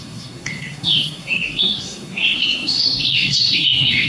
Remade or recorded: remade